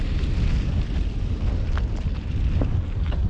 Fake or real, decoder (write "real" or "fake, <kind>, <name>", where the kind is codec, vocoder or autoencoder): real